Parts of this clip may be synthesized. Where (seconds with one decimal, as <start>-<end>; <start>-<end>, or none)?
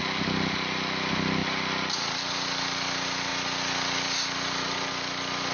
none